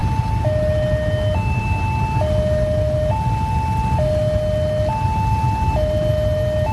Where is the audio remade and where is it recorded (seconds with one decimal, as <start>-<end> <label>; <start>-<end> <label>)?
0.0-6.7 recorded